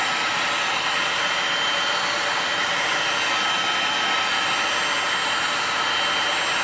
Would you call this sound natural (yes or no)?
yes